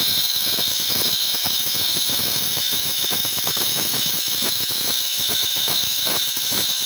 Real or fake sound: fake